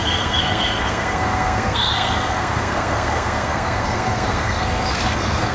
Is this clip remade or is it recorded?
remade